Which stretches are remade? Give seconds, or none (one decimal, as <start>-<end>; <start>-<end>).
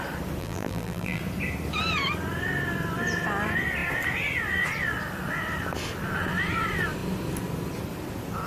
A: 0.4-1.2